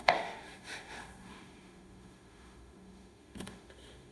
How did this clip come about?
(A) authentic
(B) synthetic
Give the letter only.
B